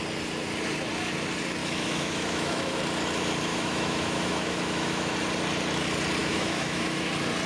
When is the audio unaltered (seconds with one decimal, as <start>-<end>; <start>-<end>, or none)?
0.0-1.6; 2.8-3.5; 5.1-6.2; 7.1-7.5